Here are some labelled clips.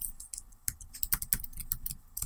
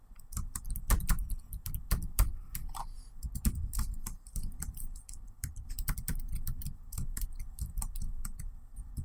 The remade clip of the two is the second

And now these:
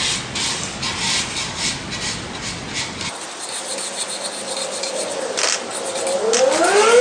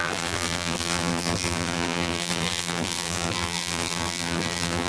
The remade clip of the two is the second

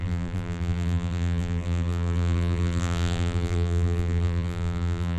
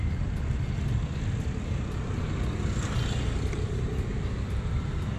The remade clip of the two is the first